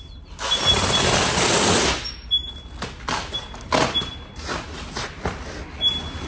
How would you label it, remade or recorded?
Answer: recorded